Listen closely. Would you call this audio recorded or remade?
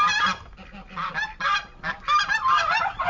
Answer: recorded